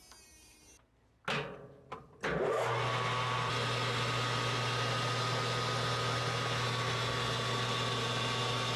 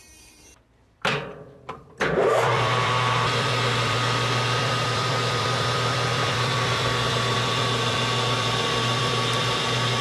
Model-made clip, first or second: second